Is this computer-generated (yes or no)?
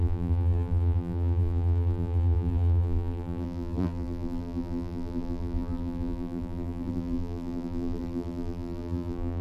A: yes